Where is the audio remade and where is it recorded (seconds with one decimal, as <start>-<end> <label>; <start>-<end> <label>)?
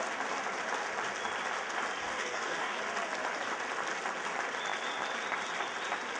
0.0-2.0 recorded; 2.0-2.8 remade; 2.8-6.2 recorded